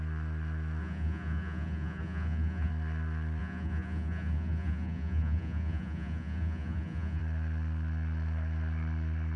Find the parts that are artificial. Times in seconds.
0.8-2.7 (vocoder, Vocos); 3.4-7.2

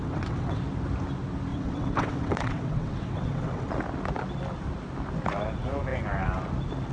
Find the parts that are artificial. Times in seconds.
0.0-0.6 (vocoder, WaveNeXt); 1.5-3.7

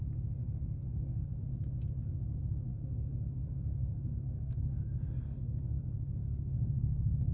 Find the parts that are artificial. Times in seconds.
0.4-1.3 (codec, SNAC); 2.7-7.3

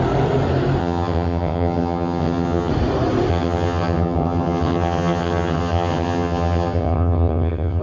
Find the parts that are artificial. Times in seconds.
0.8-2.7 (vocoder, HiFi-GAN); 3.3-7.8